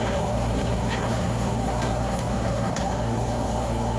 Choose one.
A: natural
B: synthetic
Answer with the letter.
B